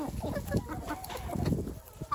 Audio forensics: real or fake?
real